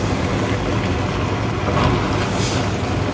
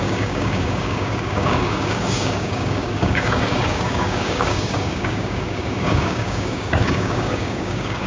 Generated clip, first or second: second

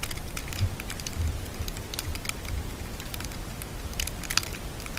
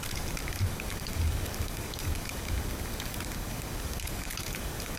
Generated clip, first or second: second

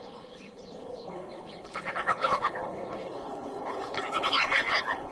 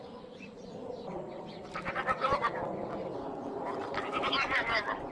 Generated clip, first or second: first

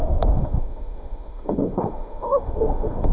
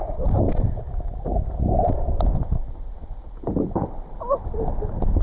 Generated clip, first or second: first